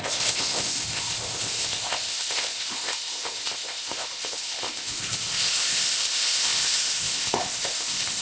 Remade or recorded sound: remade